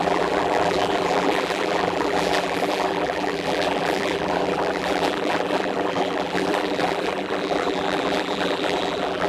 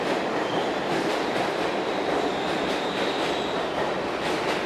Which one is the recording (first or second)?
second